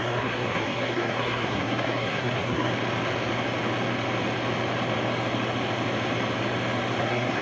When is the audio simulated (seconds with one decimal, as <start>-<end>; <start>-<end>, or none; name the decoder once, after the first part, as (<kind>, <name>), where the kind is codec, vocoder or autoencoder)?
0.0-2.7 (codec, SNAC); 7.0-7.4